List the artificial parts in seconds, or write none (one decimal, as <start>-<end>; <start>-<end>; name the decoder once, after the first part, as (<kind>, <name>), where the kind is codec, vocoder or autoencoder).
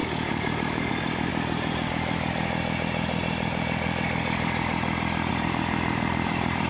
0.0-1.3 (vocoder, BigVGAN v2); 5.3-6.7